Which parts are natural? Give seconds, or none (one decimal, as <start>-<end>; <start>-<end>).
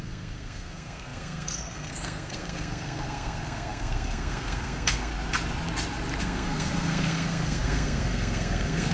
5.1-6.2